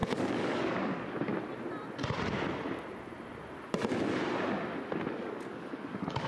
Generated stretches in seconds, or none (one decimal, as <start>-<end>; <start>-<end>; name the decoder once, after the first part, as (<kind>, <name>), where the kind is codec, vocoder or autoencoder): 0.0-1.3 (codec, DAC); 5.1-6.3